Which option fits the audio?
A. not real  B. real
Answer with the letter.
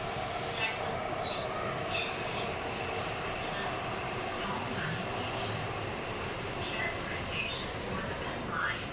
B